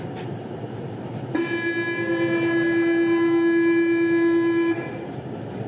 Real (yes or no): yes